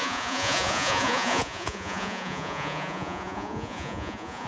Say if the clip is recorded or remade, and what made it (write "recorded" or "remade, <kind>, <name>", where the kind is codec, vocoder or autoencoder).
remade, vocoder, Vocos